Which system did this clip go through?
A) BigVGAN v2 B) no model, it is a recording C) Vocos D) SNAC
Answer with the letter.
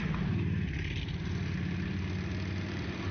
B